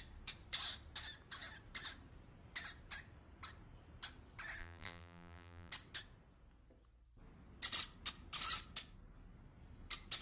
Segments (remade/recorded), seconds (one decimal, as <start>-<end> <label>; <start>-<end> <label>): 0.0-4.6 recorded; 4.6-5.7 remade; 5.7-10.2 recorded